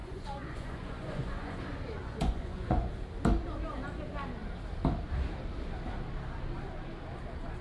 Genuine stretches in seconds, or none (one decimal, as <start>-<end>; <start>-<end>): 1.6-2.0; 2.9-7.6